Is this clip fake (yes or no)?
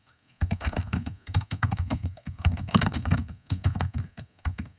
yes